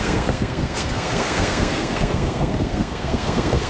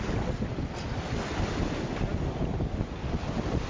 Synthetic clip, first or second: first